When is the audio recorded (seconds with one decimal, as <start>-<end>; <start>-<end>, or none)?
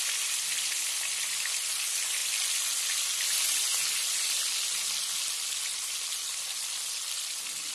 0.0-7.7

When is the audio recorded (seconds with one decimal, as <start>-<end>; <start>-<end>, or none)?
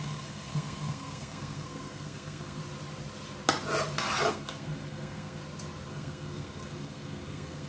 2.6-4.3; 5.4-5.9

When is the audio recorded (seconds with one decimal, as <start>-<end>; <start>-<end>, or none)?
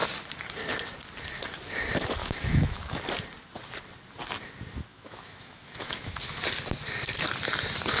0.0-2.2; 3.0-4.9; 6.1-8.0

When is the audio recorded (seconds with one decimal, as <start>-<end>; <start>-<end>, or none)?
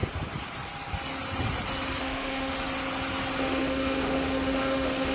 0.0-2.0; 2.5-3.4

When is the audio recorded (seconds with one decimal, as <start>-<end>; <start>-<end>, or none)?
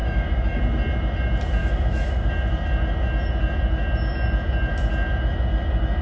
0.6-1.6; 2.3-6.0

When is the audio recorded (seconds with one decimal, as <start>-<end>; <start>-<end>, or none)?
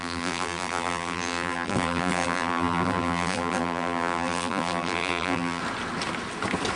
5.6-6.8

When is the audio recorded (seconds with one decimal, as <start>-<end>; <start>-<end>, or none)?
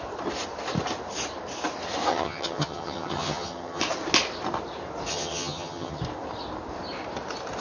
0.0-2.1; 3.8-5.1; 6.0-7.6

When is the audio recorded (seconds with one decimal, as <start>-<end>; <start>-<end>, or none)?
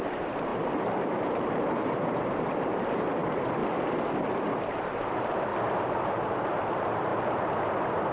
3.6-4.3; 5.5-6.1; 7.1-8.1